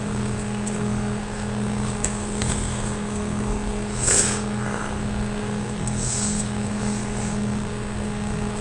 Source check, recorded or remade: remade